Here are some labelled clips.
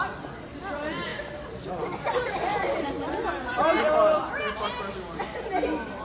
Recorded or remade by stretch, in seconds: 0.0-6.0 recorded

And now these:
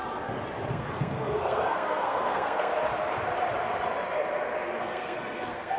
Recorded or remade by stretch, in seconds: 0.0-0.7 recorded; 0.7-2.7 remade; 2.7-4.8 recorded; 4.8-5.8 remade

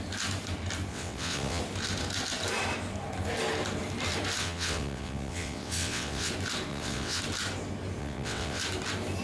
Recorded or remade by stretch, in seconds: 0.0-0.9 recorded; 0.9-1.6 remade; 1.6-4.4 recorded; 4.4-6.3 remade; 6.3-6.7 recorded; 6.7-7.2 remade; 7.2-8.0 recorded; 8.0-8.6 remade; 8.6-9.2 recorded

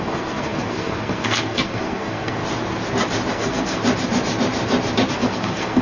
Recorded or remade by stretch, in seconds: 0.0-2.4 remade; 2.4-3.3 recorded; 3.3-3.8 remade; 3.8-5.1 recorded; 5.1-5.8 remade

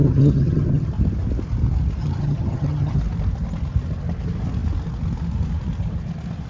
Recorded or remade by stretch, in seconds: 0.0-0.9 remade; 0.9-2.0 recorded; 2.0-3.0 remade; 3.0-6.5 recorded